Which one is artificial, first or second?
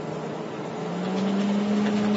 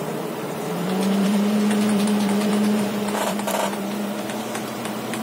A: second